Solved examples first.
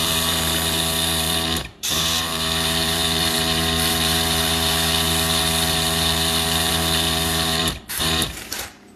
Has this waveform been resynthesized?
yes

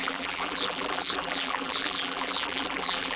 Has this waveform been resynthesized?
yes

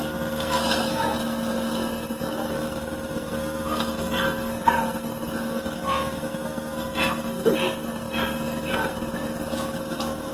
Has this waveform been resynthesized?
yes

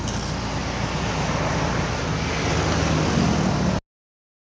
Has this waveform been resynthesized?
no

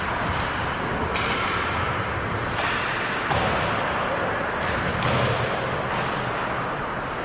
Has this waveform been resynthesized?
no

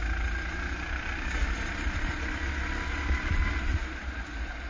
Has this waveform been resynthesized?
no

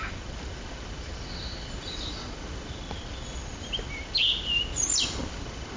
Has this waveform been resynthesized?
no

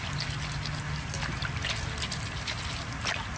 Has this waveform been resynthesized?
no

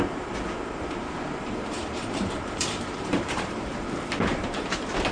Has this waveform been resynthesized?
yes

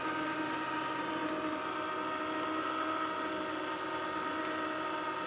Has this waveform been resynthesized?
no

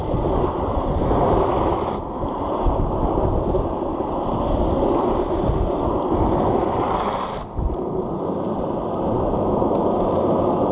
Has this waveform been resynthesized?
no